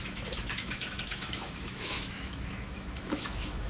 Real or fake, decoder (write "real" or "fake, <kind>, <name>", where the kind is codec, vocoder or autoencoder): fake, autoencoder, DAC-VAE